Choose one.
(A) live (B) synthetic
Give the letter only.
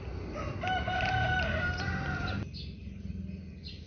A